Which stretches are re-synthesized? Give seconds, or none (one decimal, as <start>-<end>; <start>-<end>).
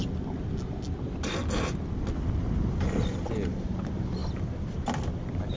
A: none